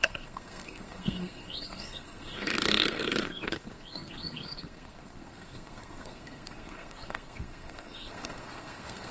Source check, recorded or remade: remade